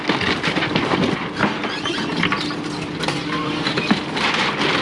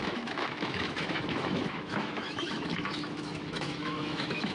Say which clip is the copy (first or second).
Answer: second